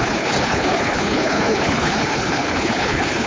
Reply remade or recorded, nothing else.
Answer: remade